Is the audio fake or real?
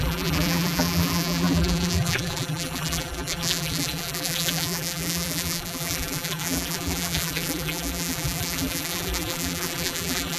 fake